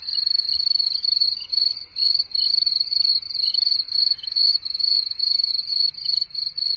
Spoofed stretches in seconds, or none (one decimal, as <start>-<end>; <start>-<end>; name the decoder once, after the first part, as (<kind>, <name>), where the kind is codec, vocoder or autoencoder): 4.5-5.7 (vocoder, Vocos)